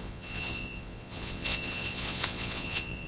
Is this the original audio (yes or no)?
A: no